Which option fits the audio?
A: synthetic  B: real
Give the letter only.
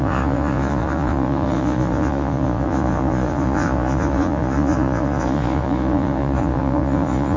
A